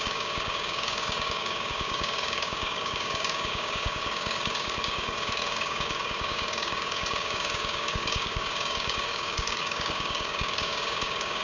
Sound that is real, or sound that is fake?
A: fake